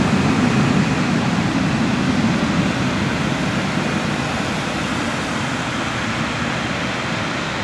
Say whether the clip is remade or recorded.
recorded